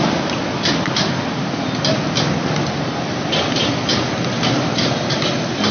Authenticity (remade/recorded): recorded